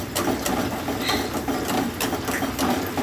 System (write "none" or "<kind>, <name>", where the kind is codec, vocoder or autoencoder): none